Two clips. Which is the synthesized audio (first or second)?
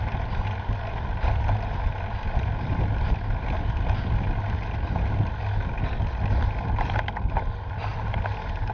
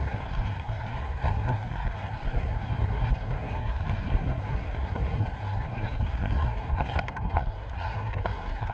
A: second